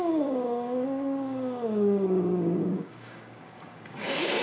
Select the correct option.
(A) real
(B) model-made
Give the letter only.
B